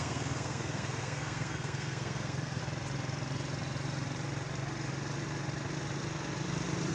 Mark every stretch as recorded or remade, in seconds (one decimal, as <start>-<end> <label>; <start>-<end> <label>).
0.0-2.6 remade; 2.6-6.9 recorded